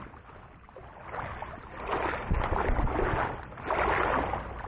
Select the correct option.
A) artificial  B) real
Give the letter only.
B